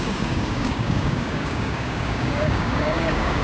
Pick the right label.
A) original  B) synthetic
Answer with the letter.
B